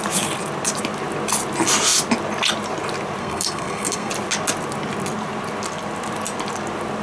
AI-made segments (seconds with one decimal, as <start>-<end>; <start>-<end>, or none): 3.2-4.1